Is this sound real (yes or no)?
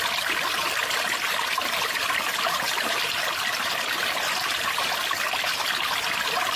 yes